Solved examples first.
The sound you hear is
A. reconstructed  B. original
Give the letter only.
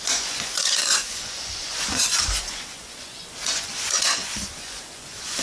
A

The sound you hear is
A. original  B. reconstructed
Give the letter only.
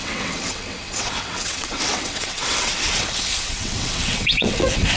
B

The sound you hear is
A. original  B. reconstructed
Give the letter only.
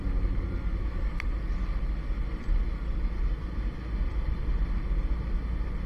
A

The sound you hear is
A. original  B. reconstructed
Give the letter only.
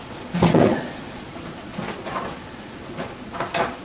B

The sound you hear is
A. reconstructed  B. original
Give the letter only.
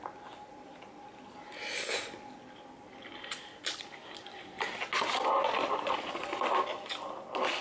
B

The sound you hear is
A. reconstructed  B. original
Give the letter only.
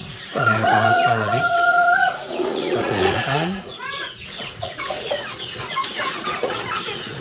A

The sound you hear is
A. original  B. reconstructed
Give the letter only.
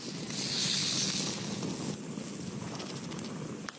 A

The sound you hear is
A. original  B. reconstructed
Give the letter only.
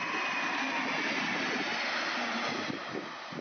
A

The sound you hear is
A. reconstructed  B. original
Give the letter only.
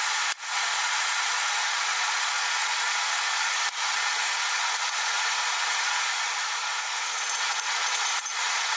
A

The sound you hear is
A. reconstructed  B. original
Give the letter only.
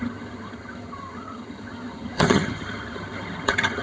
A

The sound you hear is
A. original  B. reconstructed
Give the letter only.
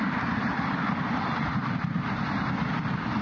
A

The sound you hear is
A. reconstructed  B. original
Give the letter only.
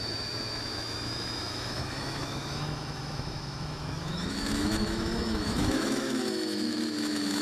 A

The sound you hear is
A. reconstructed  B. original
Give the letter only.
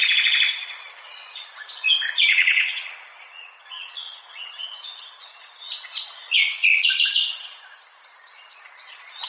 A